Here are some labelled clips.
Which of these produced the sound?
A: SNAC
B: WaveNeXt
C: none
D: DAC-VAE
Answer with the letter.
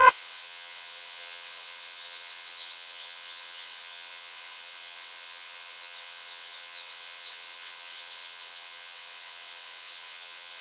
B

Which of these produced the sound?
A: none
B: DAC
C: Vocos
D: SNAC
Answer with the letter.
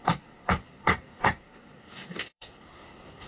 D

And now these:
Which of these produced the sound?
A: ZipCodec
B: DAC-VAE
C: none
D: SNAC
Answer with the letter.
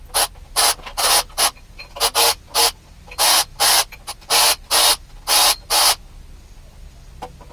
C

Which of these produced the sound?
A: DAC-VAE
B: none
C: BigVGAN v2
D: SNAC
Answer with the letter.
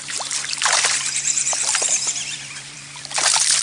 C